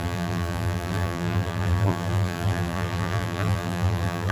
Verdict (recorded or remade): remade